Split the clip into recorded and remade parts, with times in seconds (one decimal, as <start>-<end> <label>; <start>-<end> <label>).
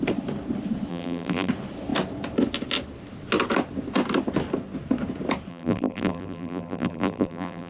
0.0-0.9 recorded; 0.9-1.5 remade; 1.5-5.5 recorded; 5.5-7.7 remade